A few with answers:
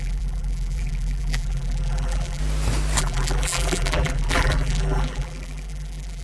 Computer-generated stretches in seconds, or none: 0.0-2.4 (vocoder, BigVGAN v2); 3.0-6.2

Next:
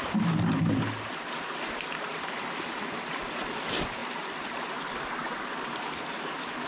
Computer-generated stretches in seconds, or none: 2.1-3.5 (vocoder, BigVGAN v2)